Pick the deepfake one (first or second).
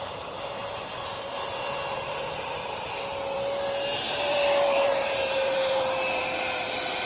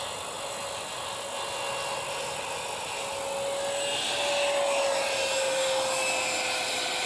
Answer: first